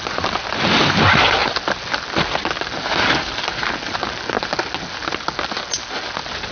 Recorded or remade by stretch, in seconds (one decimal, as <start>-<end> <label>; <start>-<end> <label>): 0.0-6.5 recorded